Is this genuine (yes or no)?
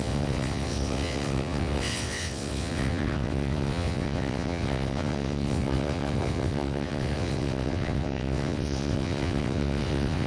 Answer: no